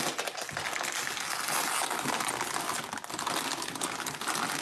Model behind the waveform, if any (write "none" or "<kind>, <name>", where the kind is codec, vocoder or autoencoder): none